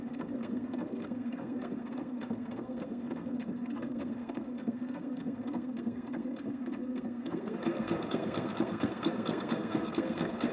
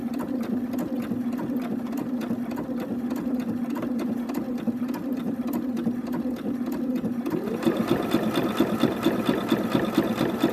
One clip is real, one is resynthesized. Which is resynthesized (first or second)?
first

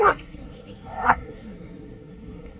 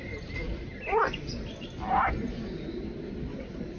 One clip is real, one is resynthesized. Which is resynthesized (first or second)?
first